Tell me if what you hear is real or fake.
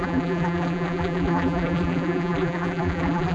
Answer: fake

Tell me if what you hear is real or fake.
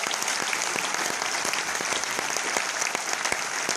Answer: real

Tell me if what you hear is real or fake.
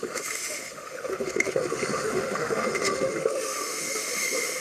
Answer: fake